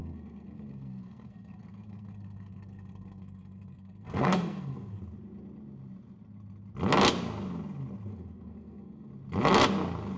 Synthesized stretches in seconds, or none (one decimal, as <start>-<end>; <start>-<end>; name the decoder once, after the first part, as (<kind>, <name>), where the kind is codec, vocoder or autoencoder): 0.0-5.0 (codec, SNAC); 8.1-9.1